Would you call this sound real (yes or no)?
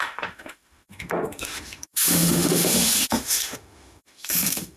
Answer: no